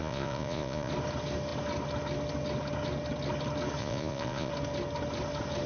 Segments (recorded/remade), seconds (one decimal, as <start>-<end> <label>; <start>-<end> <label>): 0.0-0.9 remade; 0.9-3.8 recorded; 3.8-4.5 remade; 4.5-5.7 recorded